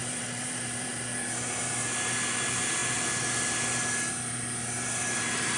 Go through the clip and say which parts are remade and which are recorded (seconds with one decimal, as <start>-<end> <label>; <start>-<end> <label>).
0.0-0.9 remade; 0.9-5.6 recorded